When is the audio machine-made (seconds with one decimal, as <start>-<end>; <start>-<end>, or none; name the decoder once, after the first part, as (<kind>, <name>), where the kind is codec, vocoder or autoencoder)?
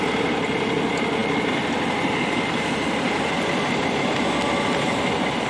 none